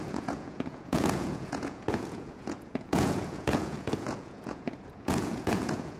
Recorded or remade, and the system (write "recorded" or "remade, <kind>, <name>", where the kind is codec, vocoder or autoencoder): remade, vocoder, Vocos